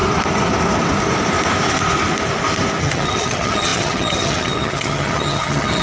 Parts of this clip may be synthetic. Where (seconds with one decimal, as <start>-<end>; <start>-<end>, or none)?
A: 2.8-5.8